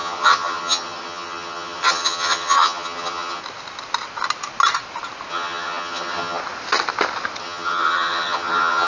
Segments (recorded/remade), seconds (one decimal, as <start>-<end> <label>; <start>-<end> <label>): 0.0-3.4 remade; 3.4-5.3 recorded; 5.3-6.4 remade; 6.4-7.4 recorded; 7.4-8.9 remade